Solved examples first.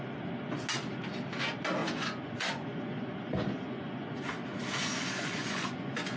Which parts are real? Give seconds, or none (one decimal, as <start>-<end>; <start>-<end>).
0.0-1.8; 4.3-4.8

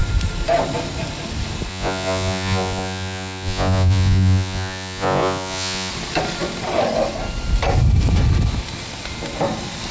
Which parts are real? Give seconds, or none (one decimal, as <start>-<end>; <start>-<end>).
0.0-1.7; 5.9-9.9

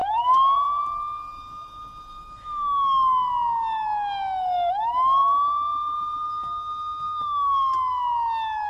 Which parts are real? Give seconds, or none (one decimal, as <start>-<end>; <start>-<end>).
0.8-8.7